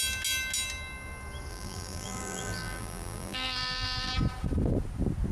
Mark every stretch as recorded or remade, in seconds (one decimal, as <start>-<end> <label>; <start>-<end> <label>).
0.0-1.5 recorded; 1.5-4.1 remade; 4.1-5.3 recorded